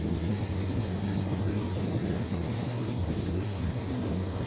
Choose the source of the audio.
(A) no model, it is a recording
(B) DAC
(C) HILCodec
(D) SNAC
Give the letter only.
D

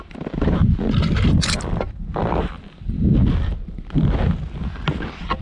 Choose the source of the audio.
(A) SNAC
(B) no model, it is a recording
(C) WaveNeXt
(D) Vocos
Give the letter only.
B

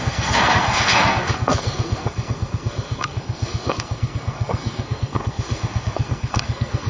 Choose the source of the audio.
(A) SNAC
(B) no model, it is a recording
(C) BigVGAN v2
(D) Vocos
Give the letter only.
A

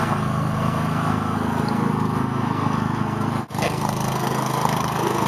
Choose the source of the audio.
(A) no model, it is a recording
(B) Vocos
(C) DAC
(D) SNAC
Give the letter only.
D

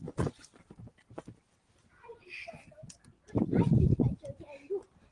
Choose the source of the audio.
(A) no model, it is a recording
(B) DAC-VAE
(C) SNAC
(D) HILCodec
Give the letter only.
A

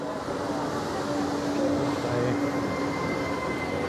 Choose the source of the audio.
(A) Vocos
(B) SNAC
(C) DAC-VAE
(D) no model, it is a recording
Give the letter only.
D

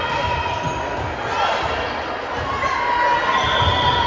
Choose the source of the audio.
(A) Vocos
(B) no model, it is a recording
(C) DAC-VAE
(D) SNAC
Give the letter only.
B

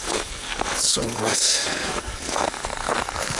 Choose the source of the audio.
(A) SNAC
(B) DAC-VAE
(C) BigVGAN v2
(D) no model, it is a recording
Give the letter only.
A